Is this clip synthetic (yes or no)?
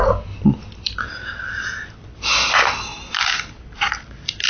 no